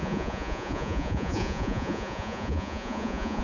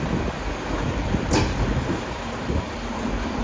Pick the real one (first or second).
second